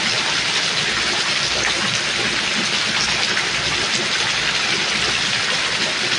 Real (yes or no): yes